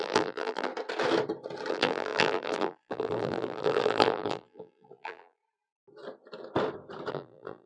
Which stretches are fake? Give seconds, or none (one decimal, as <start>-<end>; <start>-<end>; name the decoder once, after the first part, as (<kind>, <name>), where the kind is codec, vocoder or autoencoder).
0.0-0.7 (vocoder, BigVGAN v2); 1.7-5.4; 7.1-7.7